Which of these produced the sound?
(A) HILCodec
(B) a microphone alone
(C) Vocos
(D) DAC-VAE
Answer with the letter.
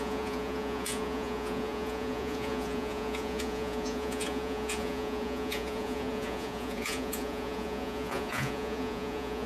C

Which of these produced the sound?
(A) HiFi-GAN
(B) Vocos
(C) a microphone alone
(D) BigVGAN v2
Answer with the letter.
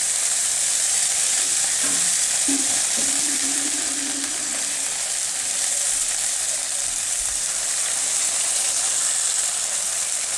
D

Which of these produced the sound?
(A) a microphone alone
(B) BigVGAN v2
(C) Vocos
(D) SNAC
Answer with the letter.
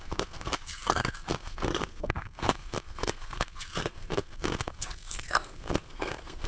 D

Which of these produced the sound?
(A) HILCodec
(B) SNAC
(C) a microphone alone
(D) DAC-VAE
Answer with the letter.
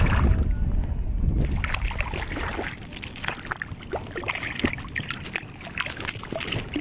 C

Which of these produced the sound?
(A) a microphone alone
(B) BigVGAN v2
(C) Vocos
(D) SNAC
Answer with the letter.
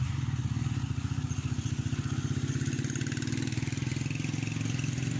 A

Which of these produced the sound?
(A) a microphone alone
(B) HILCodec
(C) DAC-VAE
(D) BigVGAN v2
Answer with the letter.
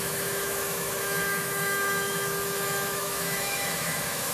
C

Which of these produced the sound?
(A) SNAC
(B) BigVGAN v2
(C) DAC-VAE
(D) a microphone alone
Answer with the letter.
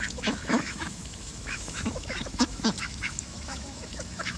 C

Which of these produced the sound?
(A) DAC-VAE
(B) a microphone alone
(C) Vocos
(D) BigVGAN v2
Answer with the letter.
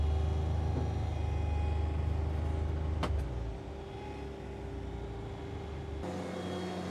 B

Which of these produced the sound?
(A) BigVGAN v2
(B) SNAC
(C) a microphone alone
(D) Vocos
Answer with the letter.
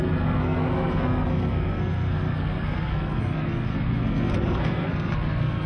B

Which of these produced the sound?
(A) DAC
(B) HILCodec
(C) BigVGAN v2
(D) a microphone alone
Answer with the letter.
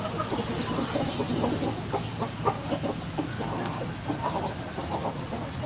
D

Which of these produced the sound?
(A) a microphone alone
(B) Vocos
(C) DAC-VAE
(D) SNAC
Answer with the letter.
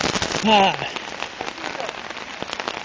A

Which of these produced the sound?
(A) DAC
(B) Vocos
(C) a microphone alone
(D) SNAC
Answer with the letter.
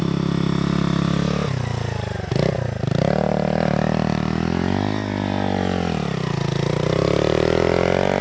C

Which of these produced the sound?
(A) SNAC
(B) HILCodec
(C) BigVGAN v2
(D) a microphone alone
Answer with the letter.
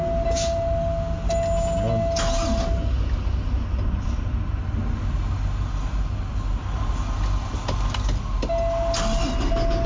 D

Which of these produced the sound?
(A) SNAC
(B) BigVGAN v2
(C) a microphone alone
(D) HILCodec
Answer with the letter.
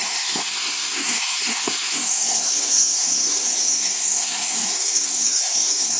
A